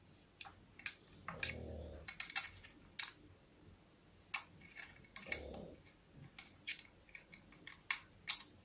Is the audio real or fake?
real